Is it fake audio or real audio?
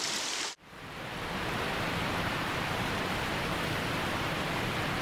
fake